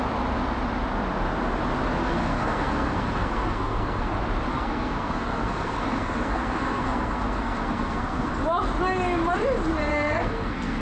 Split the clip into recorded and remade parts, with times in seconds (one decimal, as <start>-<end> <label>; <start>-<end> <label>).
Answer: 0.0-2.0 recorded; 2.0-4.1 remade; 4.1-4.5 recorded; 4.5-8.3 remade; 8.3-9.9 recorded; 9.9-10.8 remade